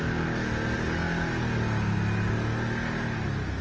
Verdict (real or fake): real